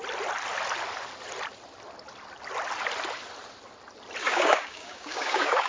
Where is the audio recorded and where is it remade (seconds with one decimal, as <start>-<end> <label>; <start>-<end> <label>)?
0.0-4.2 recorded; 4.2-5.7 remade